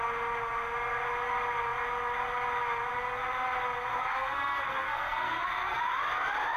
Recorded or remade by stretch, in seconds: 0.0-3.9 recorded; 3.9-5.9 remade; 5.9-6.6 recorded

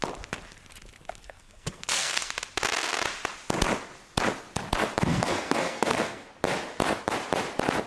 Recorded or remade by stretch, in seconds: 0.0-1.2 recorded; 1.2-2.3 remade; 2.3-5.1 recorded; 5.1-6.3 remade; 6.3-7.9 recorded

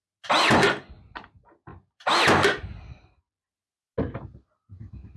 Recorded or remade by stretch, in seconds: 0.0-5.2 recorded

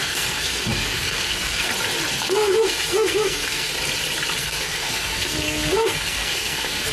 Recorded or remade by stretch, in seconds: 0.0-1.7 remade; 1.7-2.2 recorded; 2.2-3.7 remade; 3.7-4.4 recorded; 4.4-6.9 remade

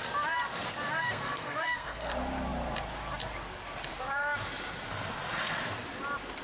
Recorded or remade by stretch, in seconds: 0.0-1.0 recorded; 1.0-2.1 remade; 2.1-6.4 recorded

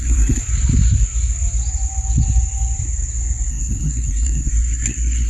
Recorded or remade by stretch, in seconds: 0.0-0.4 remade; 0.4-3.5 recorded; 3.5-5.3 remade

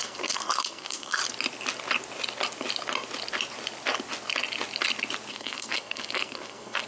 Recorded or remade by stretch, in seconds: 0.0-1.2 remade; 1.2-5.3 recorded; 5.3-6.9 remade

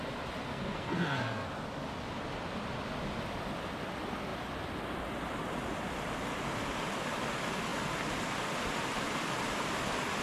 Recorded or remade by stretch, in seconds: 0.0-0.5 recorded; 0.5-1.5 remade; 1.5-10.2 recorded